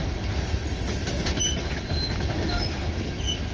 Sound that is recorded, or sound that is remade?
recorded